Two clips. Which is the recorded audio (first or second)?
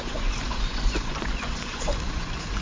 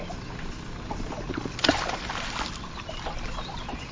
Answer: second